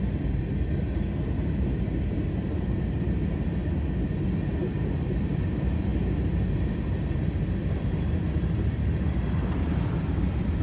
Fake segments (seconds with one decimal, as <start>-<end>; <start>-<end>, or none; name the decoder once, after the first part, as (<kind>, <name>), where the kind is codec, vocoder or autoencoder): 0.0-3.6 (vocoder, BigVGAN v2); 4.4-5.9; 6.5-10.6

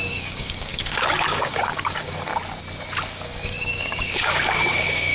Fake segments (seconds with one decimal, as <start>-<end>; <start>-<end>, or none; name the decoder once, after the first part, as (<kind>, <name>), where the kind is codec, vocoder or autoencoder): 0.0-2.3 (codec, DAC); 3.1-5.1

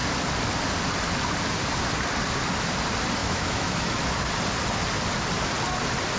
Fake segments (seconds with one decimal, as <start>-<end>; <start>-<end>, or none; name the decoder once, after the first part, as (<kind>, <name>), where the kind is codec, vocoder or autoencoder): 3.2-4.0 (autoencoder, DAC-VAE)

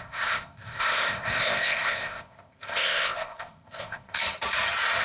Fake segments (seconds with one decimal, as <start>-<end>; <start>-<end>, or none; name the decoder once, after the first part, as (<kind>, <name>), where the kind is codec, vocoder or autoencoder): 0.0-4.2 (codec, ZipCodec)